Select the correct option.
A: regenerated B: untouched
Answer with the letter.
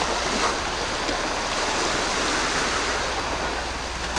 B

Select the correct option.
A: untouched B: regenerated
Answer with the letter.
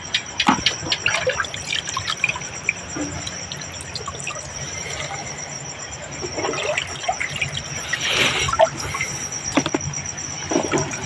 A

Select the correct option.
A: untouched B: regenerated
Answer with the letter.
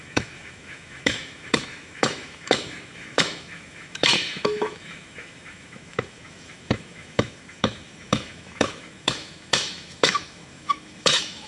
B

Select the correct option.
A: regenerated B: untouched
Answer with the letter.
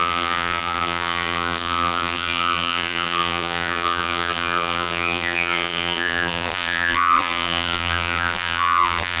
A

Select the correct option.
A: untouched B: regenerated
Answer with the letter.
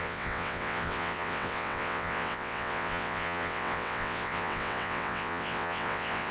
B